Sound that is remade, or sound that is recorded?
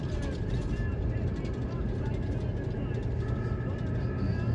recorded